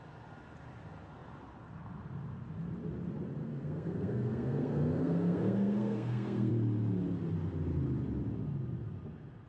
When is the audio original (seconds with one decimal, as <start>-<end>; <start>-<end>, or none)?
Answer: 0.0-3.4; 6.5-9.5